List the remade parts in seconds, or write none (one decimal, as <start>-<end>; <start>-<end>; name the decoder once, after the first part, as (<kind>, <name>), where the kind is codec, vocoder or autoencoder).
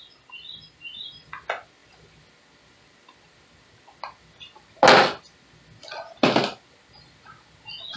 none